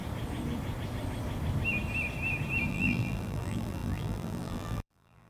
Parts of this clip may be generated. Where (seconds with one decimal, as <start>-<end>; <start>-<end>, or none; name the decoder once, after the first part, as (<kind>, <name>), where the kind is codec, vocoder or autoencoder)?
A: 2.7-5.3 (vocoder, BigVGAN v2)